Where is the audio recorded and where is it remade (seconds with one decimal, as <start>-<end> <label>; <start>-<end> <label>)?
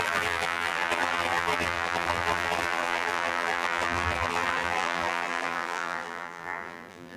0.0-7.2 remade